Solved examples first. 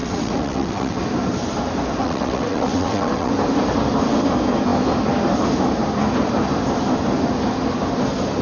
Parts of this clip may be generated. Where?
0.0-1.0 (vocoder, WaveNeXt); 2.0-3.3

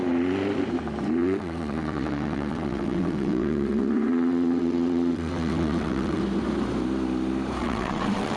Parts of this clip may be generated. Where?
1.2-6.2 (vocoder, WaveNeXt); 7.6-8.4

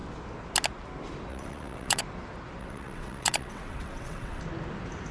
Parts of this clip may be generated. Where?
1.3-2.0 (vocoder, WaveNeXt); 2.6-4.4

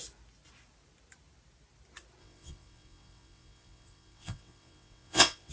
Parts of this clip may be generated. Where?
2.2-5.5 (vocoder, WaveNeXt)